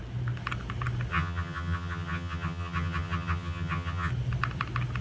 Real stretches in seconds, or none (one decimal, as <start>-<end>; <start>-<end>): 0.0-1.1; 4.1-5.0